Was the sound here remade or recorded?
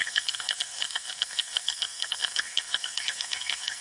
remade